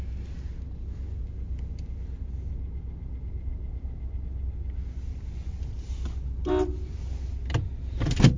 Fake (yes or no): no